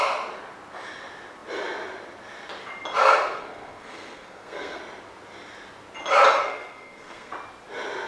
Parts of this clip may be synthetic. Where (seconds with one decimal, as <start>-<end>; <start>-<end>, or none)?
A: 3.0-4.8; 6.4-7.3